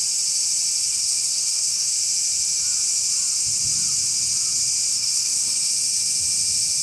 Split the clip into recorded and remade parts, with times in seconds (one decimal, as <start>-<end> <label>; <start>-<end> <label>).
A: 0.0-0.9 recorded; 0.9-1.9 remade; 1.9-4.9 recorded; 4.9-5.7 remade; 5.7-6.8 recorded